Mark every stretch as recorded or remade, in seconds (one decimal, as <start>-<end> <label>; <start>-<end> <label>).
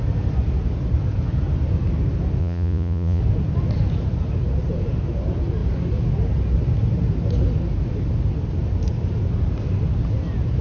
0.0-2.4 recorded; 2.4-3.2 remade; 3.2-10.6 recorded